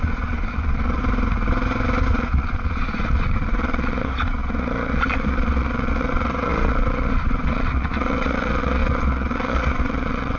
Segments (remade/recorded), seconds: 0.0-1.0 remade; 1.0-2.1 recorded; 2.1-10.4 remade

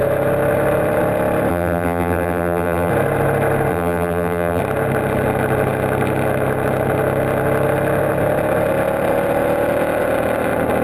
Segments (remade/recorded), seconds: 0.0-1.5 recorded; 1.5-2.9 remade; 2.9-3.7 recorded; 3.7-4.6 remade; 4.6-10.8 recorded

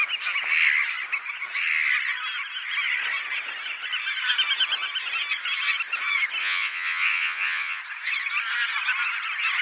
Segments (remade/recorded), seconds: 0.0-6.4 recorded; 6.4-7.8 remade; 7.8-9.6 recorded